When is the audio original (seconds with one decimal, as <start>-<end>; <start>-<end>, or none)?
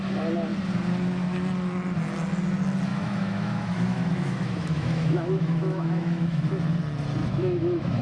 0.0-2.9; 6.5-7.2